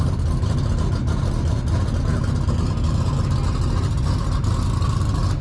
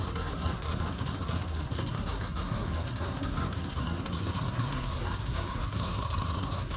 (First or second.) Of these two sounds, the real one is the first